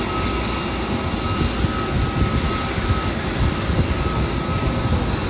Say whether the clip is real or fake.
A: real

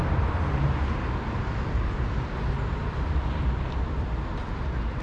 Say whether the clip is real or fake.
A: real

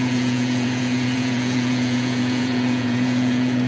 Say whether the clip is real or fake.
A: fake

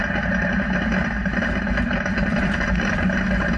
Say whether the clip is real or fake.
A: real